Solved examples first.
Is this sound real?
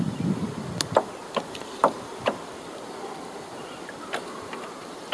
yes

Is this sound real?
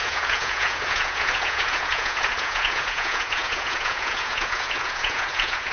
no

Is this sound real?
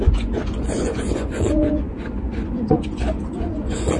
no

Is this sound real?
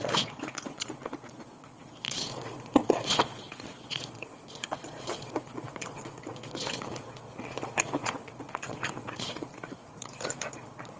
no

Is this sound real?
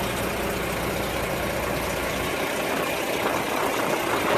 yes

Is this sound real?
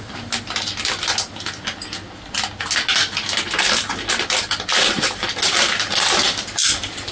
yes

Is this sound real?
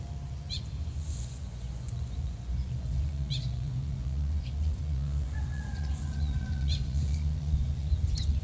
no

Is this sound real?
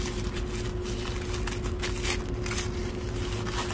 yes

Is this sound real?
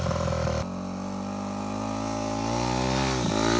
yes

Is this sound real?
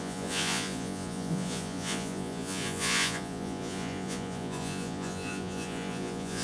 no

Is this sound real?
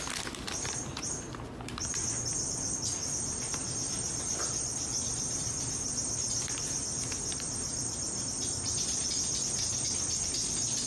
yes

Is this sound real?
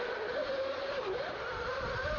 yes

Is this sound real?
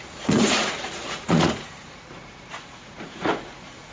no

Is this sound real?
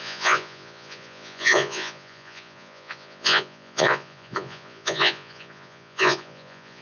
no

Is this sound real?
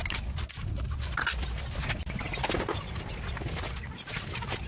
yes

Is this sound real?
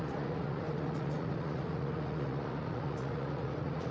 no